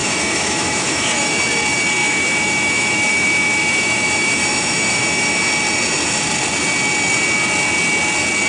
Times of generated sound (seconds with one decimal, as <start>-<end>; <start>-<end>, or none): 0.0-1.4; 2.0-5.4